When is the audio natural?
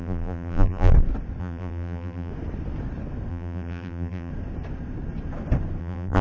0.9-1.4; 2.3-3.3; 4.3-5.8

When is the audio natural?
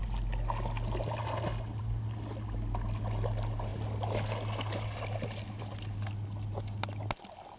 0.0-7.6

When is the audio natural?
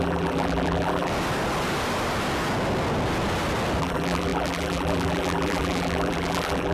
1.1-3.8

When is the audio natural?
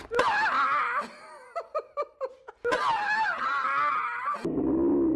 0.0-0.8; 2.4-5.2